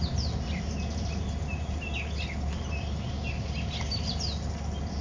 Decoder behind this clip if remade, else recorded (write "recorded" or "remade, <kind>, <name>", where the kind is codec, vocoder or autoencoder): recorded